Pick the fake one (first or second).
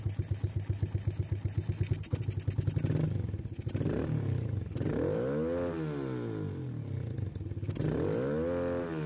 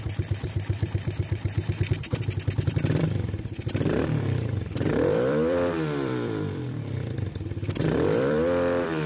second